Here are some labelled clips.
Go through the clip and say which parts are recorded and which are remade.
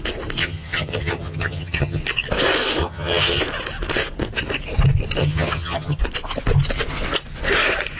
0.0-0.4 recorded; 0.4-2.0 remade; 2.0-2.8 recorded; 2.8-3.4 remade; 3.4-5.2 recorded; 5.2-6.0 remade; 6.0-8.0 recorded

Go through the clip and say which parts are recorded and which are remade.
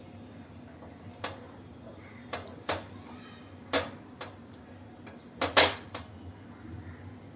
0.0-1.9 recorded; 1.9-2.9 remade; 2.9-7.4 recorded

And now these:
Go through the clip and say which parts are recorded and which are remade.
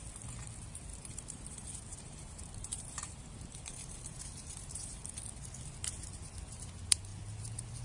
0.0-0.9 recorded; 0.9-5.1 remade; 5.1-7.8 recorded